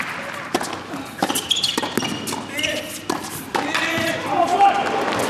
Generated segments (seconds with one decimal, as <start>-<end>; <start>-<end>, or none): none